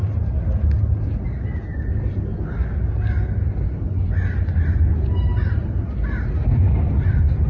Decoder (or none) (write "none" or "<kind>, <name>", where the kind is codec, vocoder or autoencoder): none